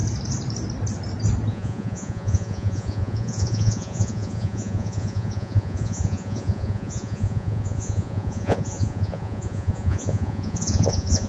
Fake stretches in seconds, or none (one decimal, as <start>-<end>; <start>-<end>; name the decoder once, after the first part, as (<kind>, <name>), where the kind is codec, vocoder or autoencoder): 1.5-11.3 (vocoder, Vocos)

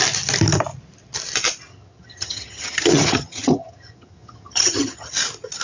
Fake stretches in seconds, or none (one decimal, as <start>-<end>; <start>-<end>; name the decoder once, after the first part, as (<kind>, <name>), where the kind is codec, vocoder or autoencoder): 1.7-5.1 (vocoder, HiFi-GAN)

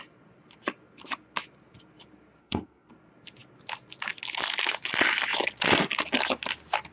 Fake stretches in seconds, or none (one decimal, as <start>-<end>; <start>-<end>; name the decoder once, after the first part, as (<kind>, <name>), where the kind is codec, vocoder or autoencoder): 2.4-2.9 (codec, SNAC)

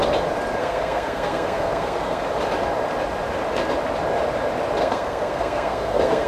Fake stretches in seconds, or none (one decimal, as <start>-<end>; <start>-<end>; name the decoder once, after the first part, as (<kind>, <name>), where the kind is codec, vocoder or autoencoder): 0.6-2.2 (codec, SNAC); 4.8-6.3

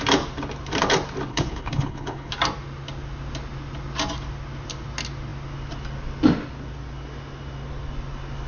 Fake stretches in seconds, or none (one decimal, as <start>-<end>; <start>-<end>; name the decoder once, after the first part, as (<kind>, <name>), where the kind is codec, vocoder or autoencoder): 1.3-2.3 (codec, HILCodec)